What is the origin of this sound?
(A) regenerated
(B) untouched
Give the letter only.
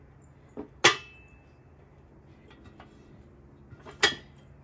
B